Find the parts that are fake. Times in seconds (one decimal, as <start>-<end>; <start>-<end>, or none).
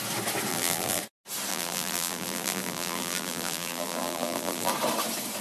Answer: 0.5-1.0; 1.5-4.7